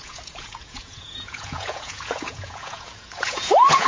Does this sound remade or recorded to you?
remade